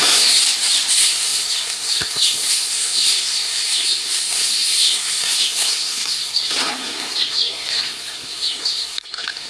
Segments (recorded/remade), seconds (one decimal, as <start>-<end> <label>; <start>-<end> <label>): 0.0-0.4 remade; 0.4-0.9 recorded; 0.9-9.5 remade